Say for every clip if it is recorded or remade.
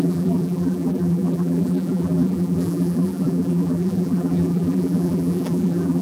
remade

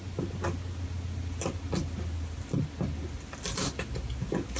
recorded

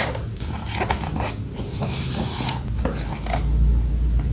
recorded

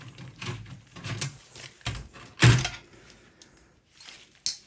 recorded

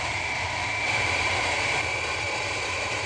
remade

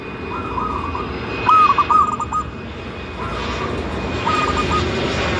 recorded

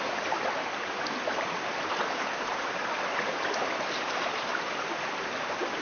recorded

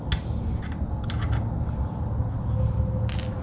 recorded